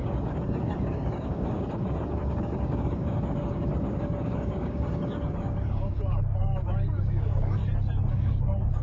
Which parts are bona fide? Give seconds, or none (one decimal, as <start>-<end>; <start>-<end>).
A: 7.6-8.1